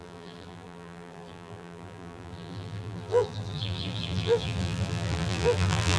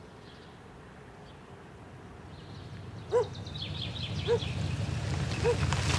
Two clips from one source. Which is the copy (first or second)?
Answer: first